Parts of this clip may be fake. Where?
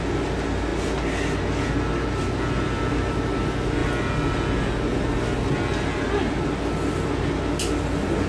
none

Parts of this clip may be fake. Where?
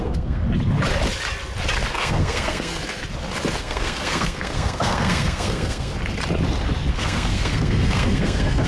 0.0-0.4; 1.9-2.7; 3.6-5.9; 6.9-8.7